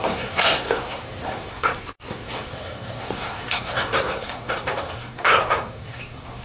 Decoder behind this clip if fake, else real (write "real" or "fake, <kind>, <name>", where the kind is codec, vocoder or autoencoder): fake, codec, SNAC